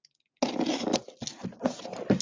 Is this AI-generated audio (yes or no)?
no